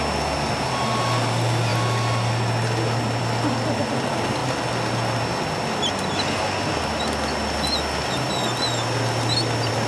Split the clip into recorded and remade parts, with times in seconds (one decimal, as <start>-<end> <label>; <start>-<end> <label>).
0.0-9.9 recorded